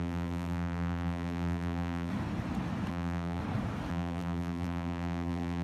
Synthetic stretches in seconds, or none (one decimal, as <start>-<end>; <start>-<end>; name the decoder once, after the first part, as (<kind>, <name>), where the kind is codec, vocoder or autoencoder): 0.0-2.1 (vocoder, BigVGAN v2); 2.9-3.4; 3.9-5.6